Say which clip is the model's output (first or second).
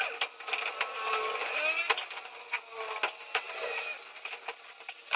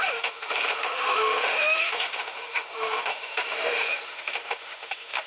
second